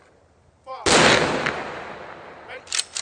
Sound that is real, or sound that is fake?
real